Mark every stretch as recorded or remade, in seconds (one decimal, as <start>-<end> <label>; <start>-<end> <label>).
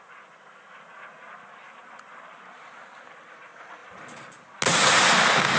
0.0-5.6 recorded